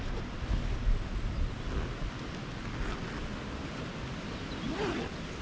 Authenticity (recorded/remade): recorded